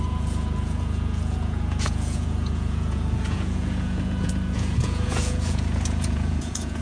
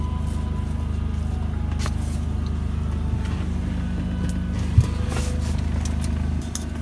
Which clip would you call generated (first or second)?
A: first